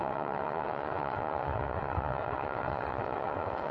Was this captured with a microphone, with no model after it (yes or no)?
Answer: no